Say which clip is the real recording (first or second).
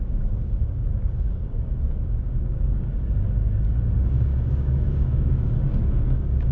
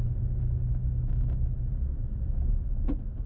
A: second